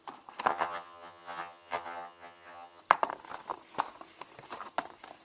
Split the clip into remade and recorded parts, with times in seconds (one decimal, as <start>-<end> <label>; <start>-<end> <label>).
0.0-0.5 recorded; 0.5-2.8 remade; 2.8-5.2 recorded